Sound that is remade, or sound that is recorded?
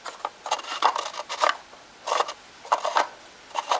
recorded